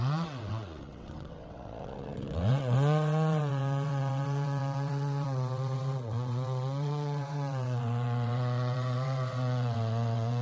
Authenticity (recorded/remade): remade